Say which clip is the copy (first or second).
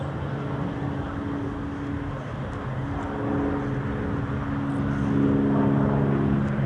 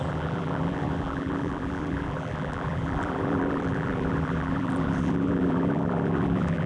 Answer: second